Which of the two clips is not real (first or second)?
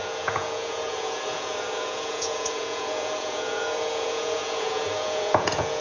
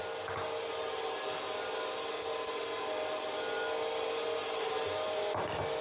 first